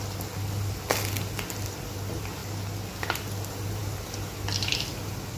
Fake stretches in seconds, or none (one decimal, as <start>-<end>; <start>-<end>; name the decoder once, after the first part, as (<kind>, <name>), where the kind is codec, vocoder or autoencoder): none

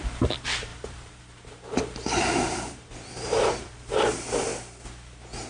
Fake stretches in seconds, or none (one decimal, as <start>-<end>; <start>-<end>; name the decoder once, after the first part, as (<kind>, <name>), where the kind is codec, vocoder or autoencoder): 0.0-4.5 (vocoder, BigVGAN v2)

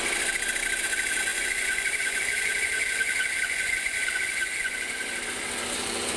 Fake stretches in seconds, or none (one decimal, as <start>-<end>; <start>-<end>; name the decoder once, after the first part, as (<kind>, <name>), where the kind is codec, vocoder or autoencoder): 1.3-5.0 (vocoder, Vocos)